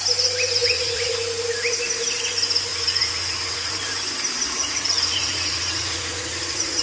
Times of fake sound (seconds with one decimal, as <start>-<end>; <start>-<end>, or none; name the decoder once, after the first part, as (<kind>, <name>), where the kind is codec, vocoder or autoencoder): 0.6-1.1 (vocoder, Vocos); 2.7-3.7; 4.6-6.8